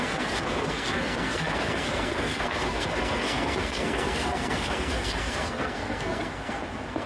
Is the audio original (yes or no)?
no